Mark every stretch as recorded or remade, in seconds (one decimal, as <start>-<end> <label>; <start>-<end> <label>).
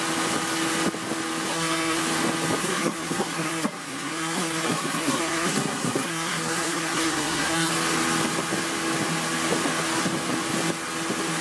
0.0-1.5 recorded; 1.5-2.0 remade; 2.0-2.6 recorded; 2.6-7.7 remade; 7.7-11.4 recorded